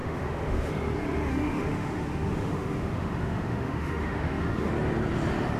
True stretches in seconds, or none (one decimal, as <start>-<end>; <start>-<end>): 0.7-1.3; 4.7-5.6